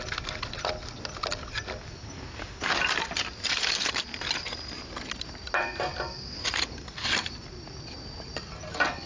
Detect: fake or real real